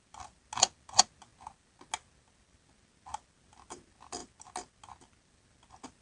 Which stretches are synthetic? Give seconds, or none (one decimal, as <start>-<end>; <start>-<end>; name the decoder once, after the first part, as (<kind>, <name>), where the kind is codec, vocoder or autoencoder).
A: none